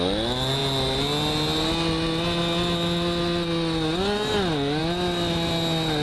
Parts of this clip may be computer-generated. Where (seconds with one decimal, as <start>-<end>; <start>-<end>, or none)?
none